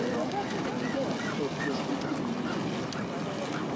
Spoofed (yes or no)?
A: no